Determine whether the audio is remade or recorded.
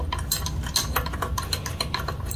recorded